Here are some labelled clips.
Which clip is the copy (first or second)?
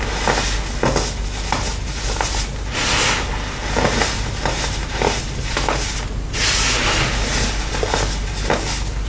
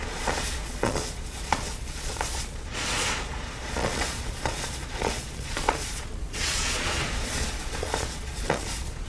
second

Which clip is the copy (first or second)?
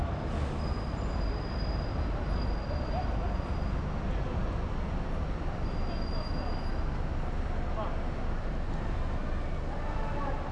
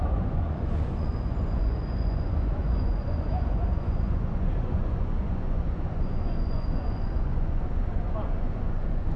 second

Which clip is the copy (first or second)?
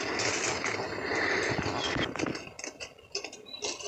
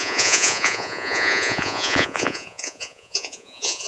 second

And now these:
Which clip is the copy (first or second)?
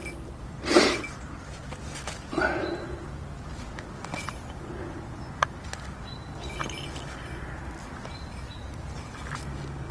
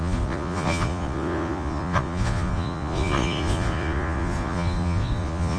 second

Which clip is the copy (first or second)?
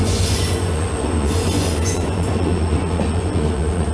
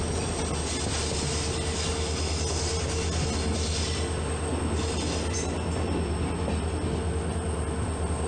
first